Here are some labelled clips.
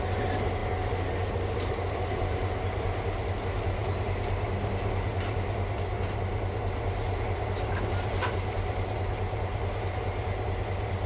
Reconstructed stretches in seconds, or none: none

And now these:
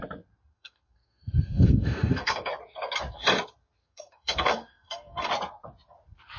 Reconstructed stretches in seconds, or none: 0.5-2.5; 3.8-5.3